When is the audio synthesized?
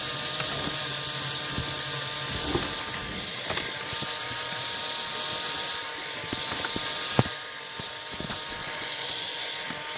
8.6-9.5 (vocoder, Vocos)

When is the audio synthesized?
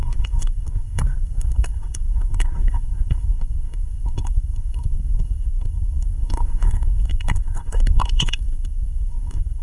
0.0-9.6 (codec, SNAC)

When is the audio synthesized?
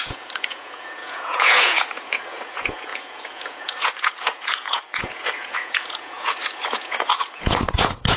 0.0-8.2 (vocoder, Vocos)